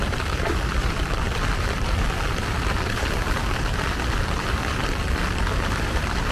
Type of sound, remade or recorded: remade